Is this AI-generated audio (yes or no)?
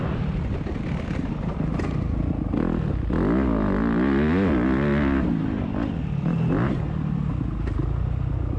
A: no